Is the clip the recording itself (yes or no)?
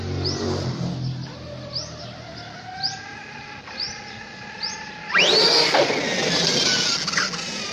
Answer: yes